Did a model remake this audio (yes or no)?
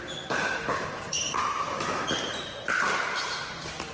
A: no